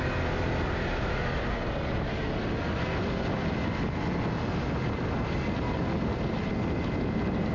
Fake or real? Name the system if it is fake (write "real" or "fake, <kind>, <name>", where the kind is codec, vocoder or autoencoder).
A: real